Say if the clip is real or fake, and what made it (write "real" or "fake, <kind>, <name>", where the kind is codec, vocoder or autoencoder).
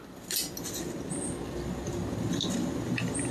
real